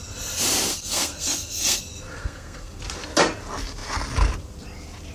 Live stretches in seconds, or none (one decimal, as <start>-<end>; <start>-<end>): 0.0-0.7; 1.8-2.2; 2.8-5.1